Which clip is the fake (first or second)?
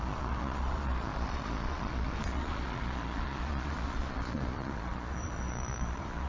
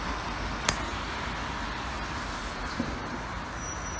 first